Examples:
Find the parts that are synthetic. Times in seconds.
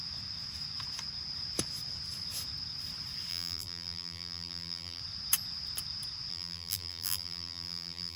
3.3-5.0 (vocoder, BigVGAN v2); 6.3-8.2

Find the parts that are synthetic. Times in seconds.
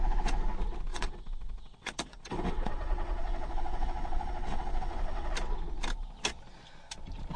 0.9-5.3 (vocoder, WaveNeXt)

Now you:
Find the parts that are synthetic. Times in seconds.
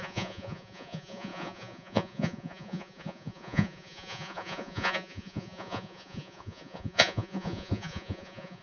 0.0-8.6 (vocoder, Vocos)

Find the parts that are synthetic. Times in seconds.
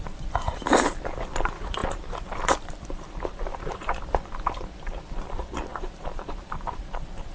0.0-1.8 (vocoder, BigVGAN v2); 5.3-7.3